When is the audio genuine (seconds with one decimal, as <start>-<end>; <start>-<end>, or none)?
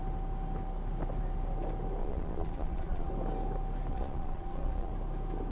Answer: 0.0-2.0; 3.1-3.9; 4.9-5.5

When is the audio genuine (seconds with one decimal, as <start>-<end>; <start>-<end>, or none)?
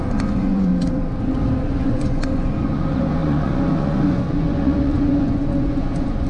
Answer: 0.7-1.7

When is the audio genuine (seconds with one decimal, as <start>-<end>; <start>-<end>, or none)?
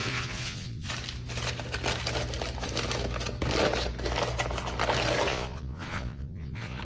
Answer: 0.9-5.3